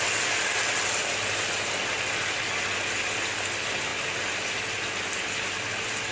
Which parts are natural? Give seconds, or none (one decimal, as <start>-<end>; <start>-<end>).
0.0-6.1